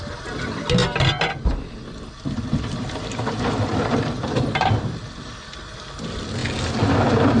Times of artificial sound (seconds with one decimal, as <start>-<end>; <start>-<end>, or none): none

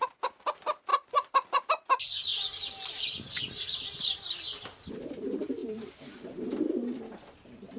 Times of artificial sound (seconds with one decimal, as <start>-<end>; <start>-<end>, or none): 0.9-1.7; 2.3-4.6; 5.6-6.1